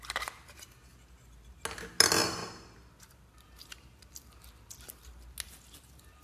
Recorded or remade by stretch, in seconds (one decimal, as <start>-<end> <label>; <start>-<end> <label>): 0.0-6.2 recorded